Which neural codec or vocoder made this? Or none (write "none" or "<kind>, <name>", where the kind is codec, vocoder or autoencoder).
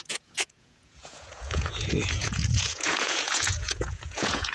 vocoder, Vocos